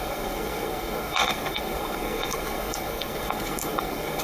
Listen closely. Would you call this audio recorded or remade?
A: remade